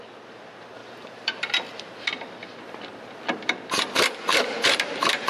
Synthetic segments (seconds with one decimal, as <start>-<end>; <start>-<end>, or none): 0.8-1.5; 4.3-5.3